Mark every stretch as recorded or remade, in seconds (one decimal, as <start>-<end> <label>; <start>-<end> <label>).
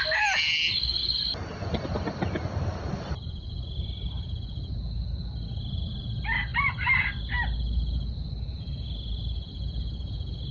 0.0-10.5 recorded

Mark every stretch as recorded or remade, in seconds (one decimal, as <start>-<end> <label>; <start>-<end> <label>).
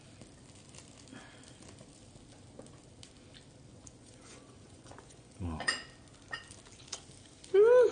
0.0-3.7 recorded; 3.7-5.7 remade; 5.7-7.9 recorded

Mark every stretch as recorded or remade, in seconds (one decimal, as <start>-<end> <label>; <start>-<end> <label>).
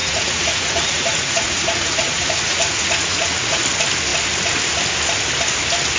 0.0-3.6 remade; 3.6-6.0 recorded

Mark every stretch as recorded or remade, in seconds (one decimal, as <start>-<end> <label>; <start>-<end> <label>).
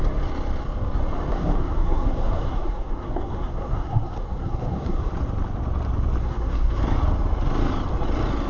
0.0-1.3 recorded; 1.3-5.1 remade; 5.1-6.2 recorded; 6.2-6.8 remade; 6.8-8.5 recorded